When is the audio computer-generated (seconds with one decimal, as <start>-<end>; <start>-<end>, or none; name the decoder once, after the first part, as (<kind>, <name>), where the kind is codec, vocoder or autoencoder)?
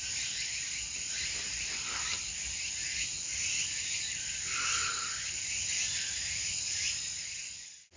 none